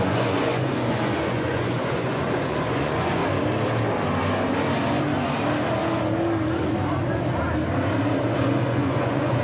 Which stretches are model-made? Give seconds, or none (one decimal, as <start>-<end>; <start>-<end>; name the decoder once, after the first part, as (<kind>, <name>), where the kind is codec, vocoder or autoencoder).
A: 0.0-3.2 (vocoder, Vocos); 8.2-9.4

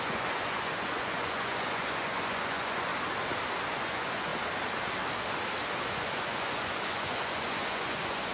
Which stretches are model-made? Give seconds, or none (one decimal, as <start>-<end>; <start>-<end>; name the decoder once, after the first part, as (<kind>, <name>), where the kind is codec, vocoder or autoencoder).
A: 0.0-2.9 (vocoder, Vocos); 3.7-4.3; 5.8-8.3